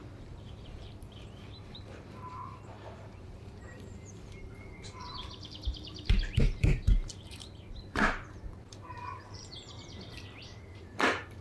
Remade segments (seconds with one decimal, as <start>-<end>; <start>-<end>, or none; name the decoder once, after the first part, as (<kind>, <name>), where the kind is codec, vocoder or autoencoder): 0.0-11.4 (vocoder, BigVGAN v2)